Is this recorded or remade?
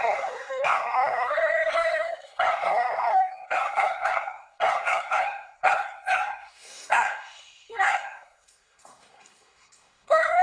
remade